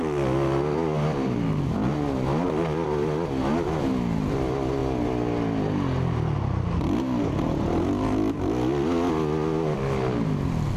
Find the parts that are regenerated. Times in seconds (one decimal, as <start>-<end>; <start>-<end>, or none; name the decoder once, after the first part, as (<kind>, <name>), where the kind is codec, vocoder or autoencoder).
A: none